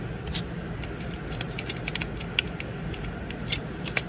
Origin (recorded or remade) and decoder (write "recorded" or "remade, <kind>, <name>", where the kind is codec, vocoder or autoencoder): recorded